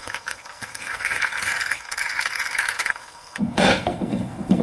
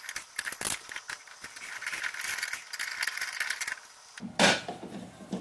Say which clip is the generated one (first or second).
first